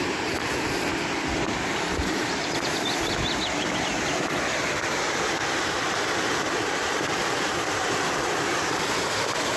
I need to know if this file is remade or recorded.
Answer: remade